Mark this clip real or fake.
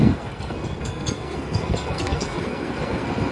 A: fake